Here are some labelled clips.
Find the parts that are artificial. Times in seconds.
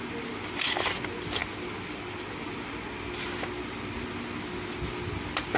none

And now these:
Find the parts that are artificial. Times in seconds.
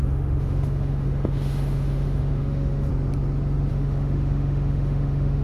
0.0-2.9 (autoencoder, DAC-VAE); 3.7-5.4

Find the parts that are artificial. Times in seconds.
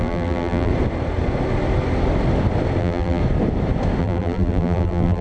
0.0-0.7 (vocoder, BigVGAN v2); 2.8-3.2; 4.0-5.2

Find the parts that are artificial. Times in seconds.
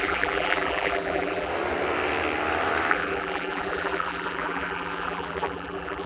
0.0-1.5 (vocoder, BigVGAN v2); 2.9-6.1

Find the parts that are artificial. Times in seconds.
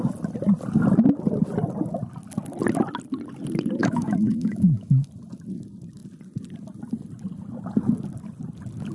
3.8-5.1 (autoencoder, DAC-VAE)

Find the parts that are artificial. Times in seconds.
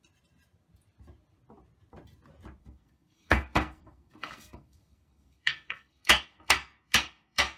2.6-7.6 (codec, SNAC)